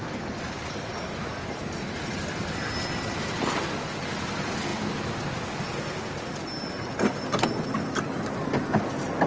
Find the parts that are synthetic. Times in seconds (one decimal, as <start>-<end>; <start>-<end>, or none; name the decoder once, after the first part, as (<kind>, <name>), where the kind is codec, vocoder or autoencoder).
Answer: none